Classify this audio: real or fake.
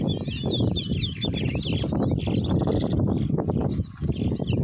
real